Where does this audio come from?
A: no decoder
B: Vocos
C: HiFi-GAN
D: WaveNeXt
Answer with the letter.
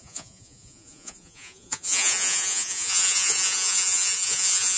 B